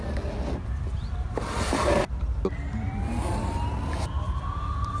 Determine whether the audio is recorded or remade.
recorded